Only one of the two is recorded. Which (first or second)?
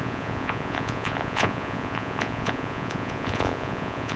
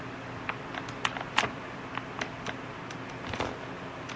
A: second